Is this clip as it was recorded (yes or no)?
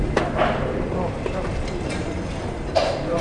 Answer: no